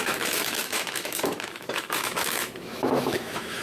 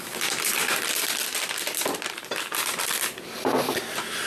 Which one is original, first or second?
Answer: second